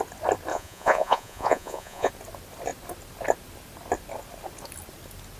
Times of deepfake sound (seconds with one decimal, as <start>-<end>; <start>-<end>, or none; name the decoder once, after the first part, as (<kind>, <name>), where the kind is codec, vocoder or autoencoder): 0.5-2.1 (vocoder, Vocos)